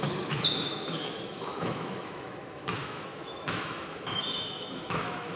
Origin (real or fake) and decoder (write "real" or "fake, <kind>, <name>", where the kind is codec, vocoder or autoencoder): fake, autoencoder, DAC-VAE